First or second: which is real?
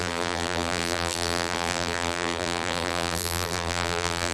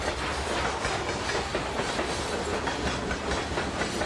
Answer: second